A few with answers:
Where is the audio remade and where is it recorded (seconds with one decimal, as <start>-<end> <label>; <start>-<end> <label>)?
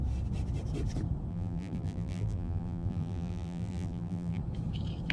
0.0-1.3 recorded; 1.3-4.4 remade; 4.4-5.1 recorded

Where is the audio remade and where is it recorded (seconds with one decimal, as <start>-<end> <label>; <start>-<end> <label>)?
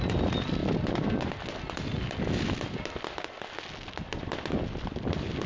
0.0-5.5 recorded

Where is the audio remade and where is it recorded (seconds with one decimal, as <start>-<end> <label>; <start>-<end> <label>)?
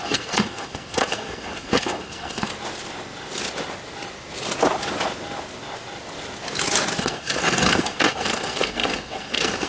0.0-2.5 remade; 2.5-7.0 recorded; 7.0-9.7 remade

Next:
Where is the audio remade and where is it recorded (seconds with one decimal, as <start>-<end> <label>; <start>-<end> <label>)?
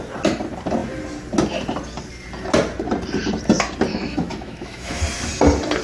0.0-3.9 recorded; 3.9-5.0 remade; 5.0-5.8 recorded